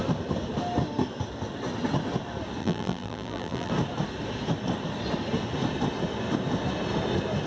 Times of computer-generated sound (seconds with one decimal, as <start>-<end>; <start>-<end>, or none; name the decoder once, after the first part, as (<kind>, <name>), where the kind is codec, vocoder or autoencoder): 2.6-3.7 (vocoder, BigVGAN v2)